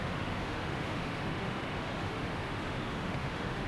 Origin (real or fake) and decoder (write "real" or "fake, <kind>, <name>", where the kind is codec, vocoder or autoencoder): fake, autoencoder, DAC-VAE